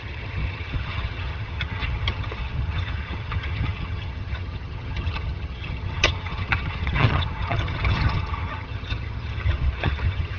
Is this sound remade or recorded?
remade